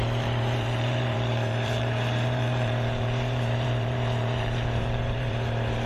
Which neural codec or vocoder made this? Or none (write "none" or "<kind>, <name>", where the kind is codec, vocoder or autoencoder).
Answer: vocoder, BigVGAN v2